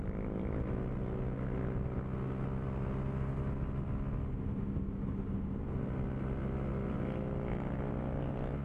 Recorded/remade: recorded